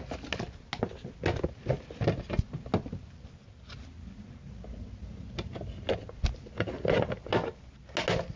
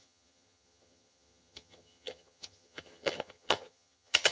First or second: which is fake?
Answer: second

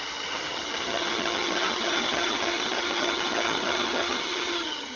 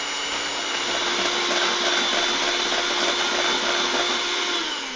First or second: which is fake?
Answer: first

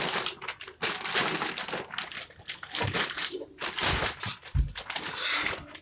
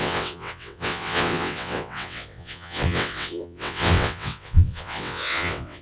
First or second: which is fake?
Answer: second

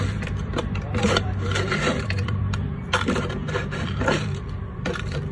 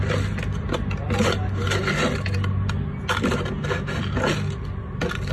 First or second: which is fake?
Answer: first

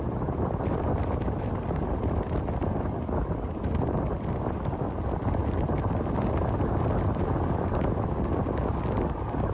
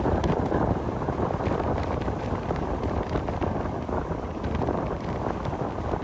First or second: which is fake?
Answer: second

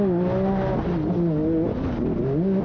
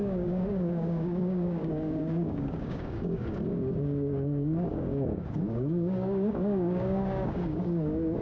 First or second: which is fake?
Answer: second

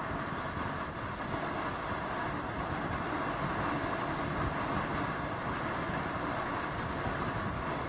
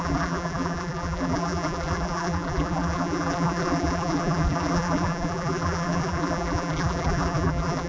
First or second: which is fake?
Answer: second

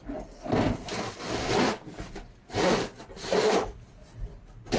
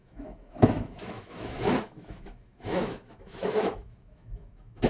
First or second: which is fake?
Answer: second